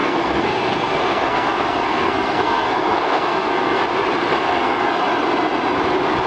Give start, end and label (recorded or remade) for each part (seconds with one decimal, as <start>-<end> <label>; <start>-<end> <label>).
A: 0.0-3.8 remade; 3.8-4.3 recorded; 4.3-5.0 remade; 5.0-6.3 recorded